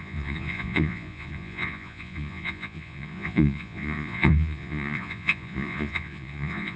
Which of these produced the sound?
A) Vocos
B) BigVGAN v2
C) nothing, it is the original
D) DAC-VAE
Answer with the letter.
A